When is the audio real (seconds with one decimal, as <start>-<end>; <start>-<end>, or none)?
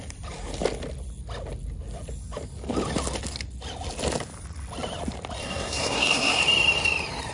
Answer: 0.0-5.4; 6.4-7.3